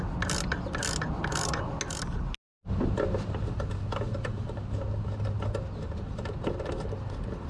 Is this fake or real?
real